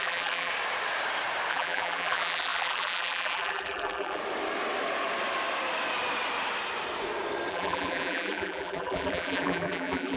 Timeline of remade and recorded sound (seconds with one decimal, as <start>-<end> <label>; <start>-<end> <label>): 0.0-0.5 remade; 0.5-1.5 recorded; 1.5-4.2 remade; 4.2-7.5 recorded; 7.5-10.2 remade

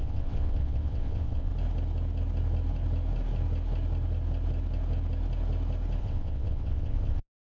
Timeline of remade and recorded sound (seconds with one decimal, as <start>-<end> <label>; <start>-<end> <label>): 0.0-1.5 remade; 1.5-6.0 recorded; 6.0-7.5 remade

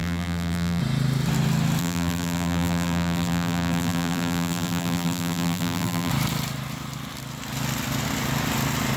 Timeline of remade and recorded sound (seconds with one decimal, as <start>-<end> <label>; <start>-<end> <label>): 0.0-0.8 remade; 0.8-1.8 recorded; 1.8-6.1 remade; 6.1-9.0 recorded

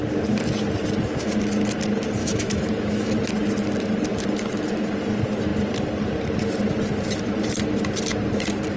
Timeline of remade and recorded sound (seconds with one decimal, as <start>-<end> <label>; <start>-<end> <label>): 0.0-2.2 recorded; 2.2-3.1 remade; 3.1-8.8 recorded

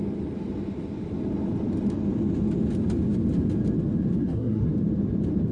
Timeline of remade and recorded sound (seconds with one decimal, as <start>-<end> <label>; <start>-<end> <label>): 0.0-4.2 recorded; 4.2-4.7 remade; 4.7-5.5 recorded